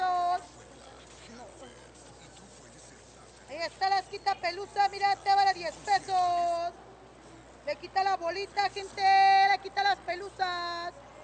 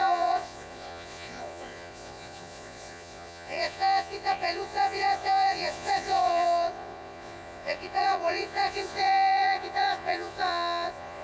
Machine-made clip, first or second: second